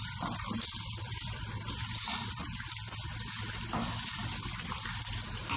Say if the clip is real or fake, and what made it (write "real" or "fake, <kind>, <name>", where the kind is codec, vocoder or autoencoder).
real